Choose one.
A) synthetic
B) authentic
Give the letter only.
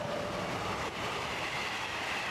B